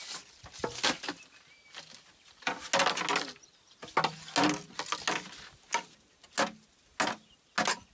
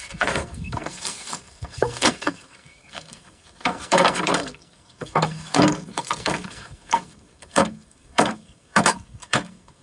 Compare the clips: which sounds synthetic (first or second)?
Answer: second